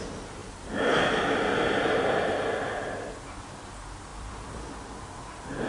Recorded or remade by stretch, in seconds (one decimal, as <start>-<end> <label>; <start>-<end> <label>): 0.0-0.4 recorded; 0.4-1.0 remade; 1.0-4.1 recorded; 4.1-4.7 remade; 4.7-5.7 recorded

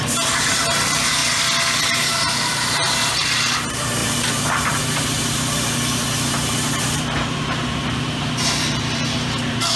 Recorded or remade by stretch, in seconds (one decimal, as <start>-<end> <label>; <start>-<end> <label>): 0.0-1.2 remade; 1.2-1.9 recorded; 1.9-9.8 remade

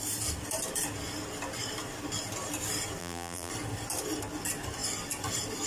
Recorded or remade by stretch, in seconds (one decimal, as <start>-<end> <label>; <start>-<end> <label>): 0.0-3.0 recorded; 3.0-3.5 remade; 3.5-5.7 recorded

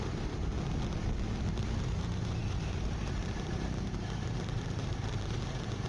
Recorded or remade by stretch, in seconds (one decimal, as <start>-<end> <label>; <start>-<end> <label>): 0.0-0.5 remade; 0.5-1.8 recorded; 1.8-5.9 remade

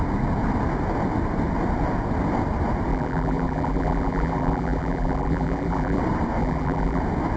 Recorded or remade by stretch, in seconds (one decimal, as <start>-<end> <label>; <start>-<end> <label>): 0.0-2.9 recorded; 2.9-6.0 remade; 6.0-6.4 recorded; 6.4-7.0 remade; 7.0-7.4 recorded

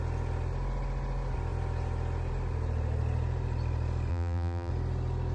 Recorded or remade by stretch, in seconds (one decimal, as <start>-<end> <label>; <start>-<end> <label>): 0.0-4.1 recorded; 4.1-4.7 remade; 4.7-5.3 recorded

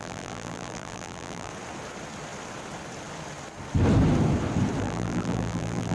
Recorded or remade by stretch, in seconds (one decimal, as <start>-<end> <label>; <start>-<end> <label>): 0.0-1.5 remade; 1.5-4.8 recorded; 4.8-5.9 remade

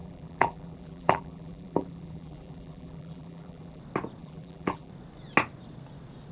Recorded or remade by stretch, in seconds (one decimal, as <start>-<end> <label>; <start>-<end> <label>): 0.0-3.8 remade; 3.8-4.2 recorded; 4.2-4.9 remade; 4.9-6.3 recorded